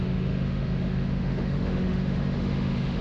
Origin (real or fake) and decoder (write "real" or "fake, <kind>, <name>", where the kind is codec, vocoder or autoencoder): fake, autoencoder, DAC-VAE